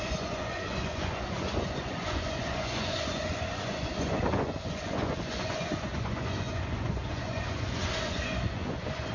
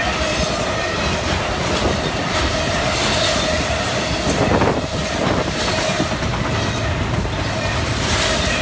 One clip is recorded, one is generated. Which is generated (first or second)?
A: first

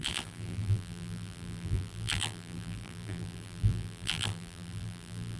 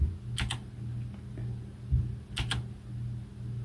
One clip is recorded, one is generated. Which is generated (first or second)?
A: first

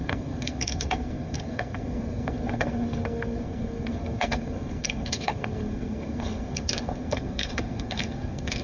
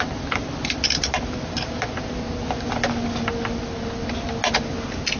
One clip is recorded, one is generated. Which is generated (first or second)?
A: first